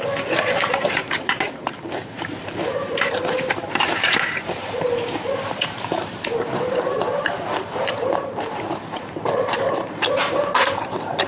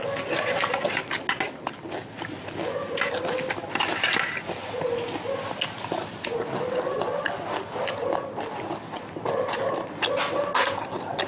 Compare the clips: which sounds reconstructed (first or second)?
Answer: first